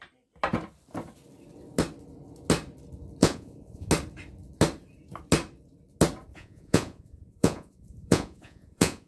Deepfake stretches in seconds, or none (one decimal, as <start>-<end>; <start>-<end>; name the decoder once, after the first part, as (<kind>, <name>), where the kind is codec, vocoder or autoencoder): 3.2-3.9 (vocoder, Vocos); 6.3-9.1